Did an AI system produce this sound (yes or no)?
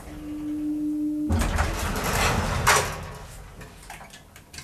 no